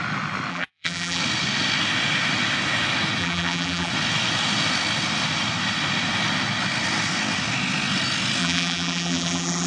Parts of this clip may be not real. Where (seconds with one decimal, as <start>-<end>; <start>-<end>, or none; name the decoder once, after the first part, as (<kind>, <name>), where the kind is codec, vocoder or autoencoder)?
0.5-1.2 (vocoder, BigVGAN v2); 3.2-3.9; 8.4-9.7